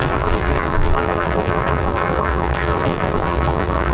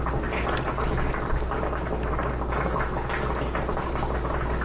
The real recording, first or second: second